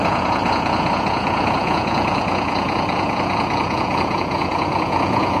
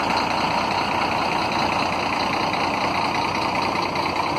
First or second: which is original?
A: second